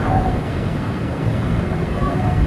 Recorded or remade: remade